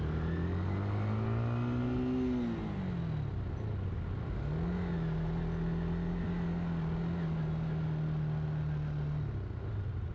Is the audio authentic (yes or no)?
yes